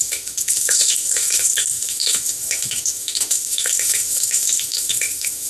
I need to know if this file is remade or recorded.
remade